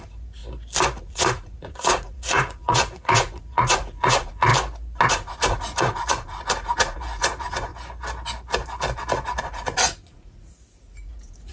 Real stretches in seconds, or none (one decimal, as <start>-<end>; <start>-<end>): 0.4-1.0; 4.5-5.1; 7.7-9.4